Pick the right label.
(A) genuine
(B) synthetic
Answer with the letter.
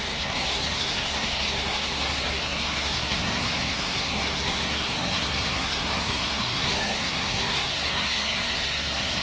B